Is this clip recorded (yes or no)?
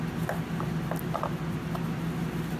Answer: yes